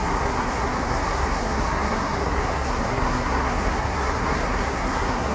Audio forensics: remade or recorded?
remade